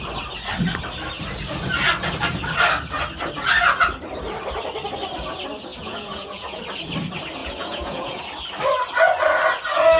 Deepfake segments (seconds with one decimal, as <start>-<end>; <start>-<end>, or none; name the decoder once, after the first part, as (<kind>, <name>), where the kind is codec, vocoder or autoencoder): 5.7-6.6 (vocoder, Vocos); 7.4-8.2